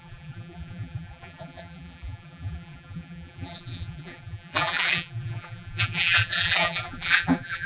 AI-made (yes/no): yes